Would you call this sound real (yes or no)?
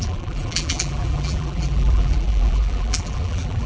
no